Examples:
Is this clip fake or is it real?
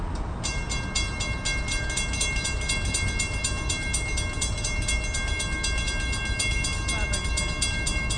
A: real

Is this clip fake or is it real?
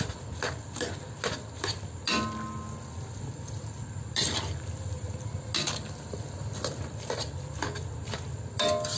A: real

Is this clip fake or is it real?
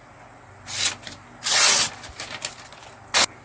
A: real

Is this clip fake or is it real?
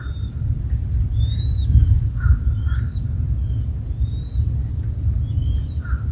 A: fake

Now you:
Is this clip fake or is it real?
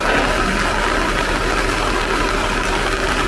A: real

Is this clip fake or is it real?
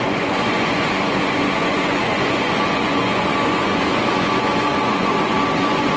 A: fake